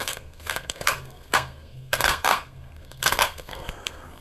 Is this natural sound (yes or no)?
no